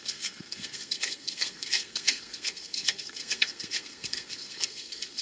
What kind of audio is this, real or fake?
fake